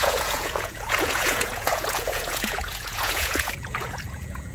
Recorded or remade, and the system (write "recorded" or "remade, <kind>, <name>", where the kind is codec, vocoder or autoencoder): remade, vocoder, Vocos